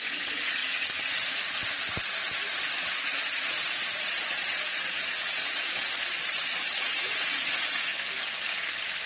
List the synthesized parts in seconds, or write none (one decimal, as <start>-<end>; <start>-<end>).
0.0-0.6; 2.7-7.9